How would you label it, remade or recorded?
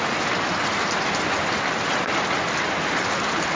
recorded